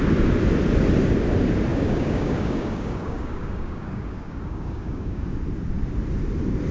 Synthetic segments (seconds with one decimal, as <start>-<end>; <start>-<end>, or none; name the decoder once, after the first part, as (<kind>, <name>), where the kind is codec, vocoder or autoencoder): 1.7-5.2 (codec, DAC)